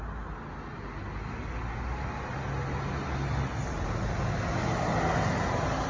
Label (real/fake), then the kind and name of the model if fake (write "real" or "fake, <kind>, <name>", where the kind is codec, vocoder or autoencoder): real